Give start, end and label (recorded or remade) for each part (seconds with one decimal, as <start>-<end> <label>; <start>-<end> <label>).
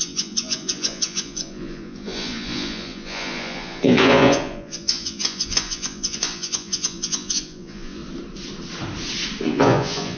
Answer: 0.0-8.0 remade; 8.0-9.4 recorded; 9.4-10.2 remade